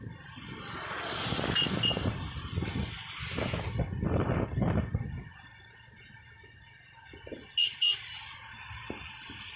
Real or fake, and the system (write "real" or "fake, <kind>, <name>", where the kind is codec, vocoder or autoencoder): real